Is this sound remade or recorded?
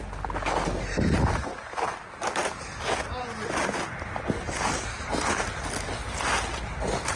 recorded